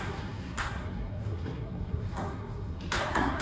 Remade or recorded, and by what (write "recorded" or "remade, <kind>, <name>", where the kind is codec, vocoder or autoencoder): remade, codec, SNAC